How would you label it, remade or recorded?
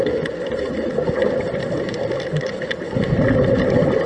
recorded